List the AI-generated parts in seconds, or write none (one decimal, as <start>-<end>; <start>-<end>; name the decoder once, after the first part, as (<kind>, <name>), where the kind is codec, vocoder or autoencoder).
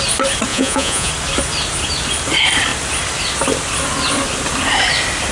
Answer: 0.5-1.1 (vocoder, Vocos)